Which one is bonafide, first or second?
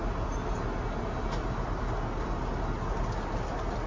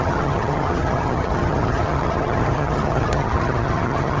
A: first